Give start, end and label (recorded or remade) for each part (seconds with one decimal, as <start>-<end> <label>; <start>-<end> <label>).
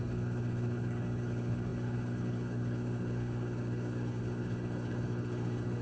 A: 0.0-5.8 remade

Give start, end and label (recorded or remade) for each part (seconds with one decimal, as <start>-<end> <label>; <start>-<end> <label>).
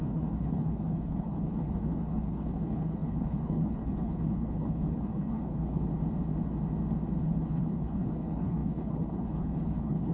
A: 0.0-5.9 remade; 5.9-7.2 recorded; 7.2-10.1 remade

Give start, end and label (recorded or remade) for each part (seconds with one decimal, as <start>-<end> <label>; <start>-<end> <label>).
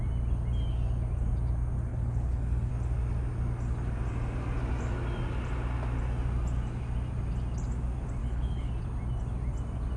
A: 0.0-1.9 recorded; 1.9-2.7 remade; 2.7-8.2 recorded; 8.2-8.7 remade; 8.7-10.0 recorded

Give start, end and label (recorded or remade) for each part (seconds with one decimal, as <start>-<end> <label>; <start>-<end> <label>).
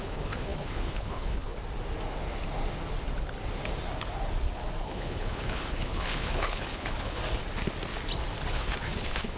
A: 0.0-1.6 remade; 1.6-4.8 recorded; 4.8-7.2 remade; 7.2-8.5 recorded; 8.5-9.4 remade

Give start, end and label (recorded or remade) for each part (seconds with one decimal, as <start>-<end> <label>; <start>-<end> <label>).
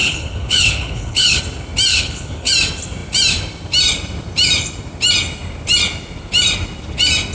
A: 0.0-1.4 remade; 1.4-1.9 recorded; 1.9-2.5 remade; 2.5-7.3 recorded